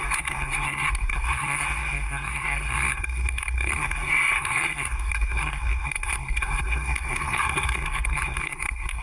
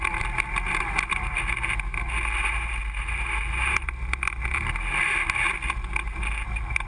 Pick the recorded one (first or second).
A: second